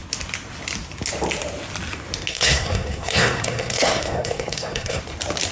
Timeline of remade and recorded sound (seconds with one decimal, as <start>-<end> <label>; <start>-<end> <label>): 0.0-2.3 recorded; 2.3-5.0 remade; 5.0-5.5 recorded